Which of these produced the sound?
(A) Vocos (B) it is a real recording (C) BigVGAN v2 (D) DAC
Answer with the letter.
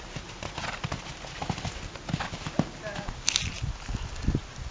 B